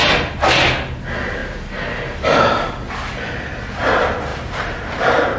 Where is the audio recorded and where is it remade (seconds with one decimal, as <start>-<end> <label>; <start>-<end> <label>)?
0.0-4.3 recorded; 4.3-5.4 remade

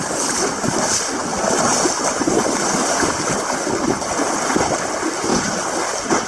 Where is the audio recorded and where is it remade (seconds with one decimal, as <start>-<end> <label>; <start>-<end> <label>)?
0.0-6.3 recorded

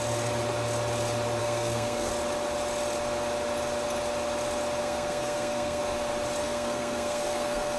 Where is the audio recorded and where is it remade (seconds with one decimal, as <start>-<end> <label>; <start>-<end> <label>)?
0.0-1.4 recorded; 1.4-2.1 remade; 2.1-4.8 recorded; 4.8-5.8 remade; 5.8-6.4 recorded; 6.4-7.8 remade

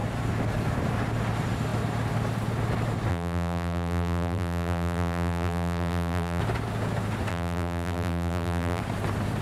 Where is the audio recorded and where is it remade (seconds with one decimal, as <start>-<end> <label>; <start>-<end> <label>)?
0.0-3.1 recorded; 3.1-6.4 remade; 6.4-7.3 recorded; 7.3-8.8 remade; 8.8-9.4 recorded

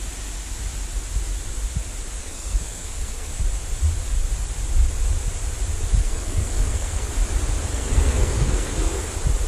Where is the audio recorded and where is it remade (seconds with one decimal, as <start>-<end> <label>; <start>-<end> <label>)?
0.0-2.2 recorded; 2.2-3.3 remade; 3.3-6.0 recorded; 6.0-7.1 remade; 7.1-7.7 recorded; 7.7-9.0 remade; 9.0-9.5 recorded

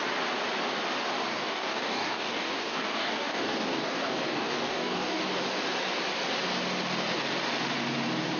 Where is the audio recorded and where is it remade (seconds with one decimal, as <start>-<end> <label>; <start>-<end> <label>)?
0.0-1.3 recorded; 1.3-5.2 remade; 5.2-8.4 recorded